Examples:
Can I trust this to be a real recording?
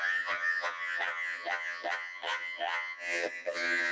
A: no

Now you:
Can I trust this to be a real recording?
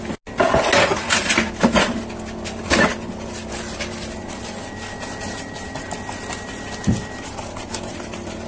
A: yes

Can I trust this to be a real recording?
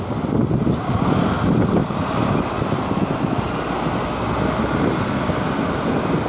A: yes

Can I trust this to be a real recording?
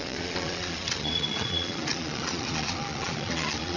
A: no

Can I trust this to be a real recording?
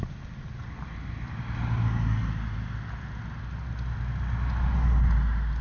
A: yes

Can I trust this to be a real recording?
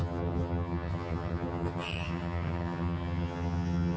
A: no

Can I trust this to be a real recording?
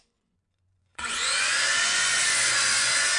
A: no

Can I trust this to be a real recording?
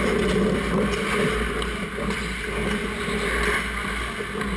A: yes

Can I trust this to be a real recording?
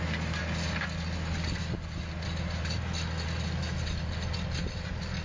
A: yes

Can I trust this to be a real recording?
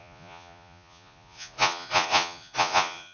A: no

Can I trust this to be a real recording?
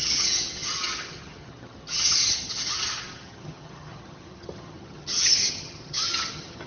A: no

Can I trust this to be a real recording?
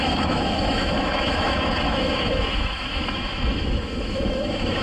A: no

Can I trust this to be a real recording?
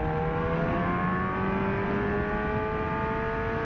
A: yes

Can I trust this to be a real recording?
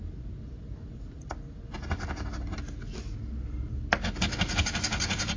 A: yes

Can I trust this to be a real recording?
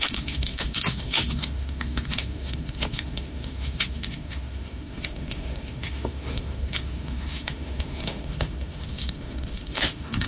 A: no